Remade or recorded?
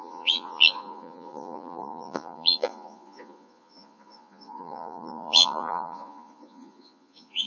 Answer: remade